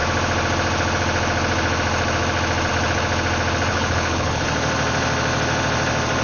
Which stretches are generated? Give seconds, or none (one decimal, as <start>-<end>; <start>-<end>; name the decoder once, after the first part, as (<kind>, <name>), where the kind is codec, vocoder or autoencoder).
3.7-4.4 (codec, HILCodec)

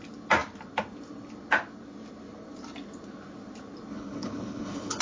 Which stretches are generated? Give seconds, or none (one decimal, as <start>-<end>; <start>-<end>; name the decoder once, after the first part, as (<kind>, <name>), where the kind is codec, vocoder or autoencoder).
3.9-5.0 (codec, HILCodec)

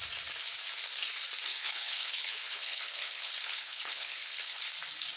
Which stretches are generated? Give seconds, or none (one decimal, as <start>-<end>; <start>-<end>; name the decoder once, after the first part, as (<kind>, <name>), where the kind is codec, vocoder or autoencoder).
1.5-4.6 (codec, HILCodec)

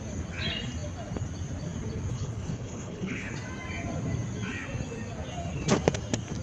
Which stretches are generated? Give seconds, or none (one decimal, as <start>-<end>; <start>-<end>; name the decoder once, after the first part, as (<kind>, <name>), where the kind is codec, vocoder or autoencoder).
2.1-3.3 (codec, HILCodec)